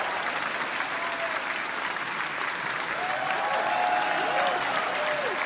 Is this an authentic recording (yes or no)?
yes